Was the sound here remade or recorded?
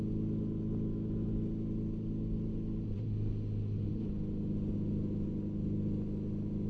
recorded